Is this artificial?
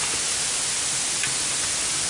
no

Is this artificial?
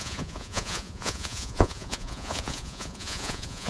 yes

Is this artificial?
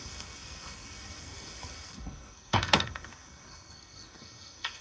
yes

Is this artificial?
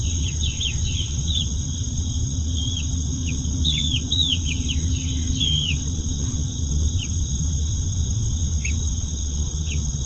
yes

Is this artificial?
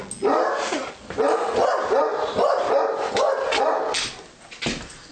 no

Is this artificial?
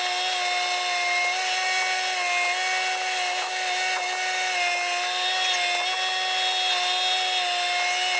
no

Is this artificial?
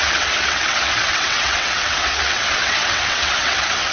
yes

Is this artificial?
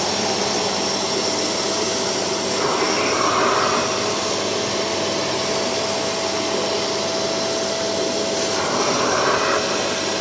no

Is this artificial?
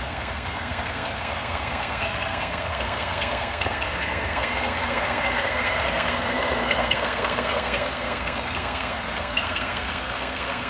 yes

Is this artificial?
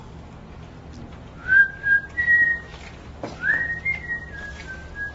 no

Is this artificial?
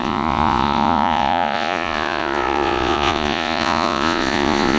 yes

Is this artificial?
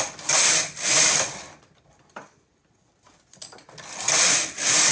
no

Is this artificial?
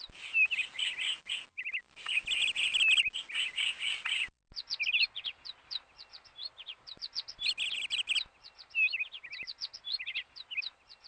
no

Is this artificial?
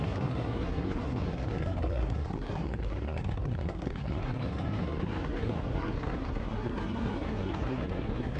yes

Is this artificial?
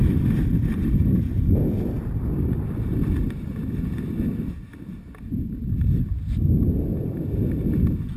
no